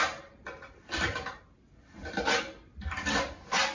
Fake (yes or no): no